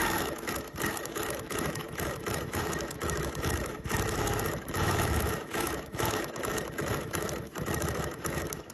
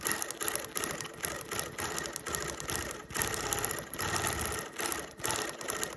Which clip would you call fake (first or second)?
first